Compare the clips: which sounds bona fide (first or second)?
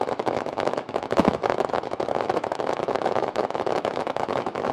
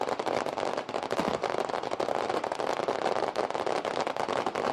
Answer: second